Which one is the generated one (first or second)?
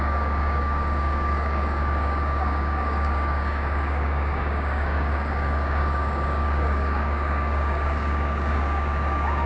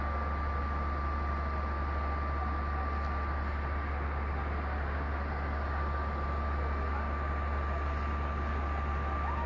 first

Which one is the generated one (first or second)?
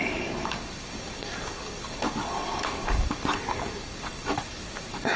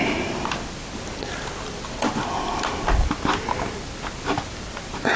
first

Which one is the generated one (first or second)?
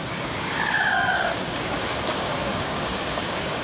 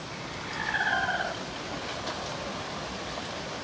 first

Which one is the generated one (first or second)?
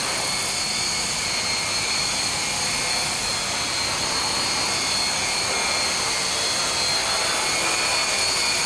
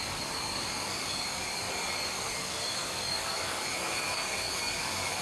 second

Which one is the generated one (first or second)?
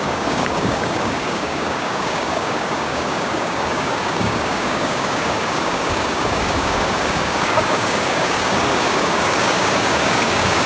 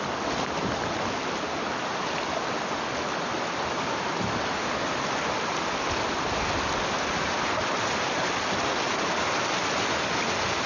first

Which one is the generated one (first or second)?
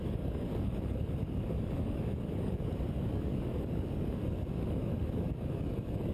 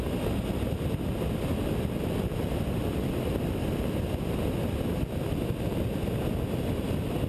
first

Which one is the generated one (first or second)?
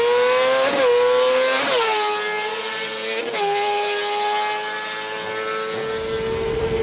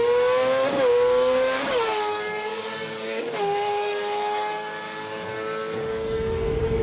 second